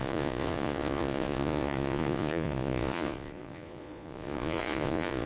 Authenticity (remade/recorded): remade